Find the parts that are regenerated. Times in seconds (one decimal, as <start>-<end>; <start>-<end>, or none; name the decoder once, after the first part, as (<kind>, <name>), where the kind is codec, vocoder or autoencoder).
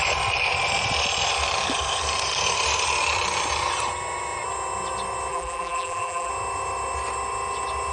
5.3-6.3 (vocoder, BigVGAN v2)